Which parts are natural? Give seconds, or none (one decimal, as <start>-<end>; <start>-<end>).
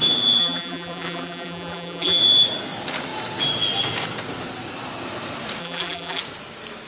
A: 0.0-0.4; 2.2-5.6; 6.2-6.9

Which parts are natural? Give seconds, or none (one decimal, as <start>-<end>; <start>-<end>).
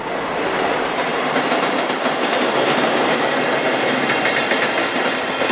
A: 0.0-1.1; 4.4-5.5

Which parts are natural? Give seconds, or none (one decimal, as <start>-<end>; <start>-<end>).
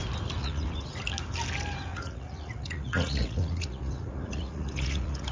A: 0.0-0.4; 1.0-1.9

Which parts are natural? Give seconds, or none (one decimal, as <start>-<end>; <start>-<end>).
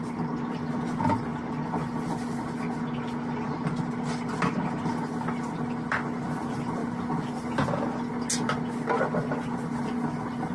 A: 0.0-10.5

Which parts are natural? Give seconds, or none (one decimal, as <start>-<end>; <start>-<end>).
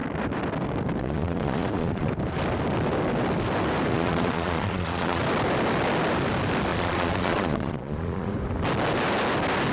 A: 0.0-1.0; 2.1-3.9; 5.2-6.7; 8.3-9.7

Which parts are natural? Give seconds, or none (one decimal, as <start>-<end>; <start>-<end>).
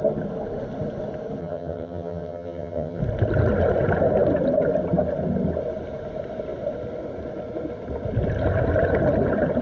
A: 0.0-1.4; 3.0-9.6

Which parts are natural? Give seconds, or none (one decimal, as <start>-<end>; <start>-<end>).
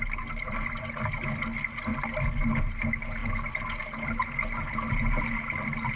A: 0.0-6.0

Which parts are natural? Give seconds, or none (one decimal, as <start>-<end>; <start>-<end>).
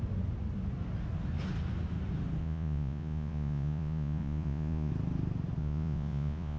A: 0.0-2.4; 4.9-5.6